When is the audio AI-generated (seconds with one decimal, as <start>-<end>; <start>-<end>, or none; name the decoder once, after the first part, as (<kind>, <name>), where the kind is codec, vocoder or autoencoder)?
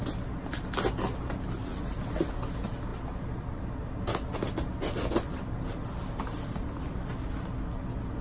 none